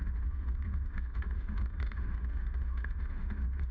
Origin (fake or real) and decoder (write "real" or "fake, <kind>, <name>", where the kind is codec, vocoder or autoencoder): fake, autoencoder, DAC-VAE